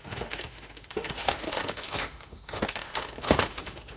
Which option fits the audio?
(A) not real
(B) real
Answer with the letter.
A